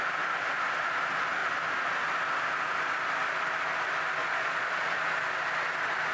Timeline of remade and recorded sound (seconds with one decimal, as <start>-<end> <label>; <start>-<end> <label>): 0.0-4.2 recorded; 4.2-5.0 remade; 5.0-6.1 recorded